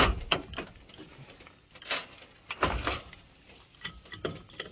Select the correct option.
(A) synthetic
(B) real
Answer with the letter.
B